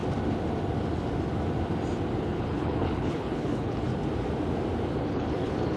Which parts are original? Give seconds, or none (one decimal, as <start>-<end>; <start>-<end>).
0.0-2.2; 3.9-4.9